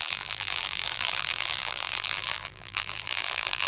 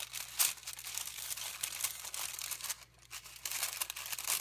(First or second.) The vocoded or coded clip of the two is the first